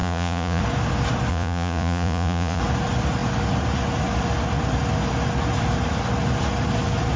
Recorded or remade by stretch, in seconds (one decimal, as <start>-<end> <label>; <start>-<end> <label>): 0.0-0.6 remade; 0.6-1.3 recorded; 1.3-2.6 remade; 2.6-7.2 recorded